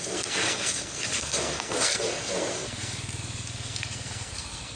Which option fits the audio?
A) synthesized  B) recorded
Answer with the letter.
A